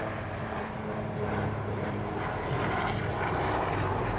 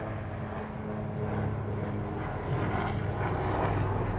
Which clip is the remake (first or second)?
first